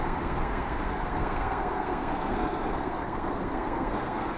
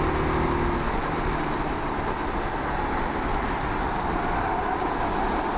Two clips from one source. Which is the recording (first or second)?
second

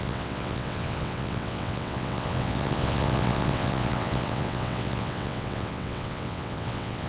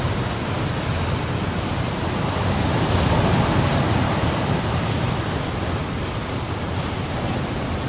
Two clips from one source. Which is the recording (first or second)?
second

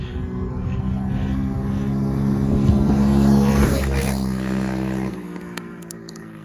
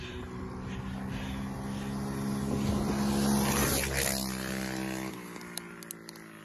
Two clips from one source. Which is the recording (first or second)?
second